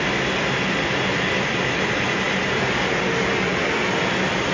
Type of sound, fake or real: real